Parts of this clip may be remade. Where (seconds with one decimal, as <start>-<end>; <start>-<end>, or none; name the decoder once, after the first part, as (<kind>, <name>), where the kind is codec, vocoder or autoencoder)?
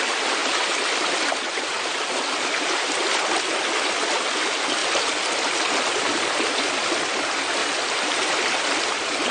none